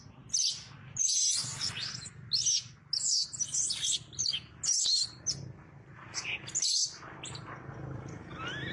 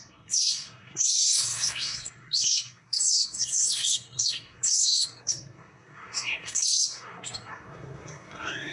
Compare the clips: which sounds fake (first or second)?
second